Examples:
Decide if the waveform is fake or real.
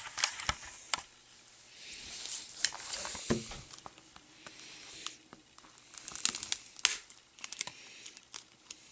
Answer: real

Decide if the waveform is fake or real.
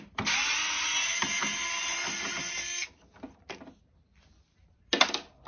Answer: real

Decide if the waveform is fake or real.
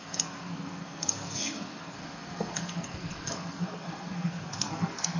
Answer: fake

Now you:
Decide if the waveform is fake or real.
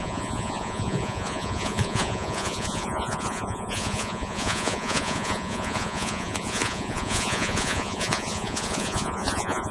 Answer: fake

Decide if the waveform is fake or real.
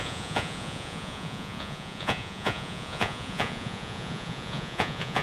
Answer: fake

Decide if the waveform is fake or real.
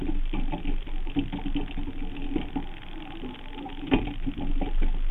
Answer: real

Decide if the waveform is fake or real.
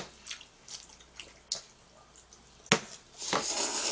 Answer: real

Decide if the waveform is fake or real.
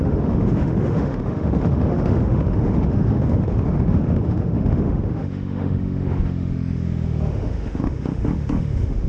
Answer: fake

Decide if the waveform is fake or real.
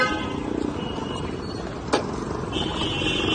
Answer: real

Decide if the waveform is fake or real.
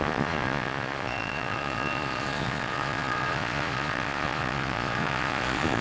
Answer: fake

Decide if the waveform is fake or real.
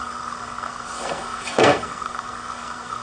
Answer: fake